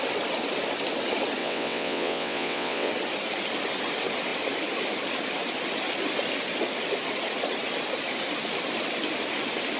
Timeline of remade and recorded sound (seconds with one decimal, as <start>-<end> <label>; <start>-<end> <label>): 0.0-1.4 recorded; 1.4-2.9 remade; 2.9-9.8 recorded